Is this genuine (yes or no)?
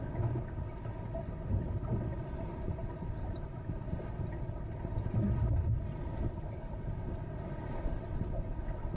yes